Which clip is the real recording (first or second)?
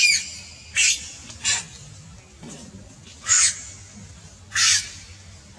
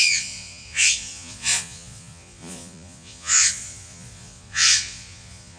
first